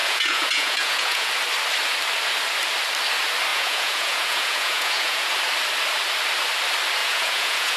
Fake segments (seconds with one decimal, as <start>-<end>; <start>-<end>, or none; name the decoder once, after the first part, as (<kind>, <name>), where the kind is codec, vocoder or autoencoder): 0.0-1.3 (vocoder, Vocos); 3.5-5.3; 7.0-7.8